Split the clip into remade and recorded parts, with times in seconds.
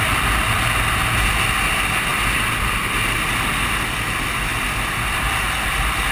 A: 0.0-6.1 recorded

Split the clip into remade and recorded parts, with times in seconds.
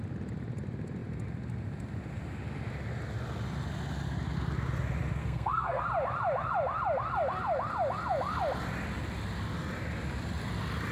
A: 0.0-5.2 recorded; 5.2-5.8 remade; 5.8-10.9 recorded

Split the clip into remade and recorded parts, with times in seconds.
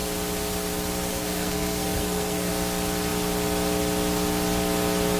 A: 0.0-1.1 recorded; 1.1-2.5 remade; 2.5-5.2 recorded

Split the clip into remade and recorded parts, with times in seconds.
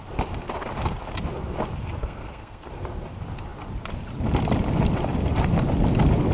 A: 0.0-2.0 recorded; 2.0-2.7 remade; 2.7-6.3 recorded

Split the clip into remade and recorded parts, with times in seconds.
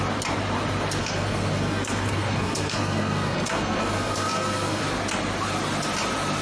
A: 0.0-1.0 recorded; 1.0-4.8 remade; 4.8-6.4 recorded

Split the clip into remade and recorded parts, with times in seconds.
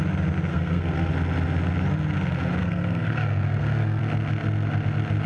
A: 0.0-0.5 recorded; 0.5-1.1 remade; 1.1-2.6 recorded; 2.6-4.0 remade; 4.0-5.3 recorded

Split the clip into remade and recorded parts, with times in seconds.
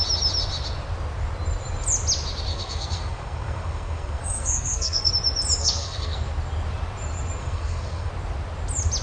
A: 0.0-2.5 recorded; 2.5-5.1 remade; 5.1-5.6 recorded; 5.6-6.3 remade; 6.3-7.4 recorded; 7.4-8.1 remade; 8.1-9.0 recorded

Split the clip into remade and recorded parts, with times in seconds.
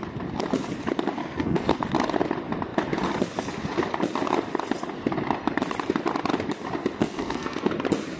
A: 0.0-1.2 recorded; 1.2-1.8 remade; 1.8-7.0 recorded; 7.0-7.7 remade; 7.7-8.2 recorded